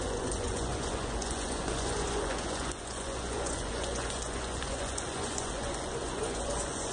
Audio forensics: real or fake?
fake